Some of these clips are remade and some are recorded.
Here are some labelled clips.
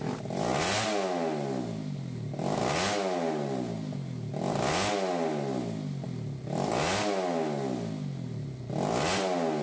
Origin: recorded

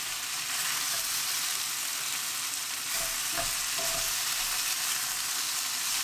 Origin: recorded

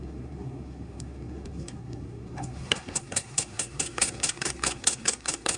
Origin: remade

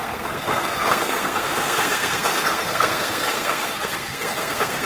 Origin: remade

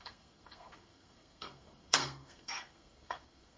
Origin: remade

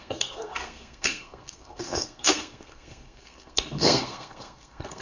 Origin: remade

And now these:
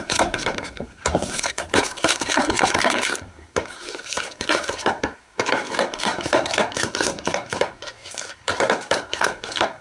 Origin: remade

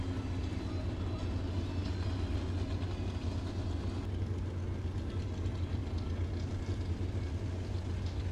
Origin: recorded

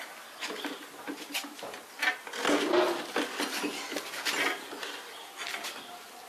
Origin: recorded